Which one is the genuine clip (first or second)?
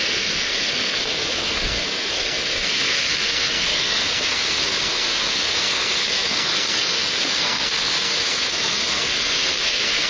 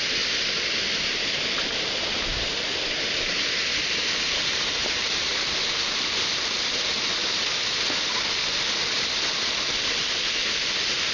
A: second